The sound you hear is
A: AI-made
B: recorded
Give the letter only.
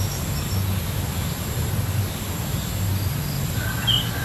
B